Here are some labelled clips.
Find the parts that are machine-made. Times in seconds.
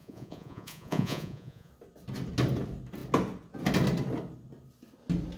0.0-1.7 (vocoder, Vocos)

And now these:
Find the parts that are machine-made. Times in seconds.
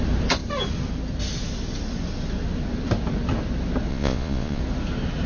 3.9-4.6 (vocoder, Vocos)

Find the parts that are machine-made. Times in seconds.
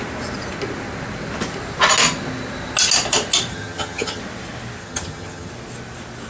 3.5-4.2 (vocoder, HiFi-GAN); 4.8-5.5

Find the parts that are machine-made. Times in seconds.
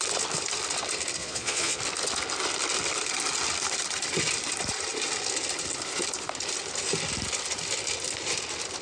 1.2-1.8 (vocoder, Vocos)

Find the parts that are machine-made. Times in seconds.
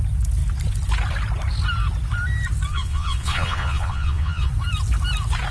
2.7-4.5 (vocoder, Vocos)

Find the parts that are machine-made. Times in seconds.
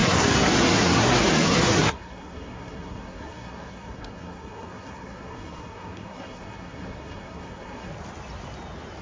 0.0-7.9 (codec, SNAC)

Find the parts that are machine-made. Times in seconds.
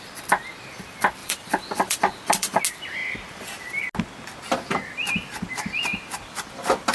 1.2-2.6 (vocoder, BigVGAN v2); 5.9-6.9